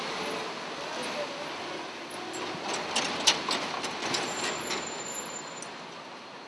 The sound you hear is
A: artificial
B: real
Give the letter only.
B